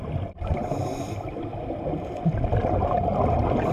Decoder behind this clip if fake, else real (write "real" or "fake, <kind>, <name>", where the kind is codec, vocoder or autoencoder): real